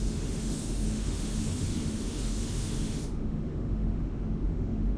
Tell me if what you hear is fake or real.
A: fake